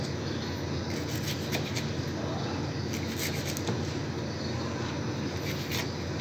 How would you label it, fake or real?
real